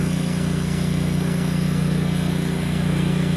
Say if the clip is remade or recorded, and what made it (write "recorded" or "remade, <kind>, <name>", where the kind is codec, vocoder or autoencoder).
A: remade, codec, SNAC